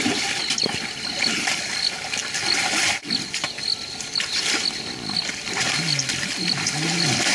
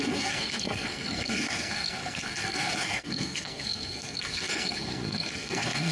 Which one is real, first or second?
first